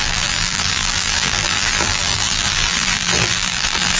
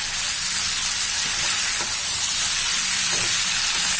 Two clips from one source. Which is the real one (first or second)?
second